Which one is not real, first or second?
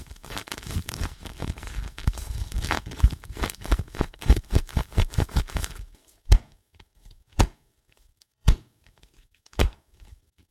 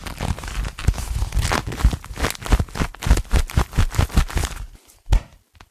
first